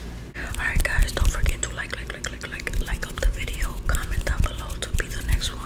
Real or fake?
real